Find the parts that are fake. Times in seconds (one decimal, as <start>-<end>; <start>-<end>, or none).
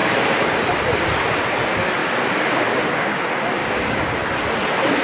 2.0-3.1; 3.6-4.1